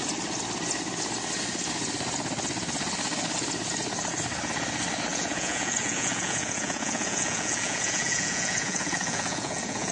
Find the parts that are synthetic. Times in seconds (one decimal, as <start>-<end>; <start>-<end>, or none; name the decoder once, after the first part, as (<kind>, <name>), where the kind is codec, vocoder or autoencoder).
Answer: 5.1-9.9 (vocoder, Vocos)